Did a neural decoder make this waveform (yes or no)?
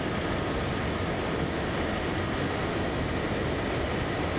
no